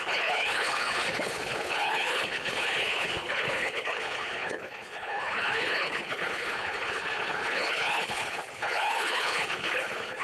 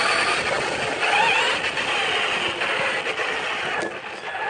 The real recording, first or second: second